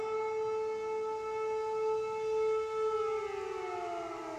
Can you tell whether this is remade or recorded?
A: recorded